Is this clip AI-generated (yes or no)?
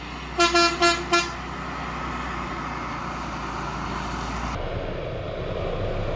no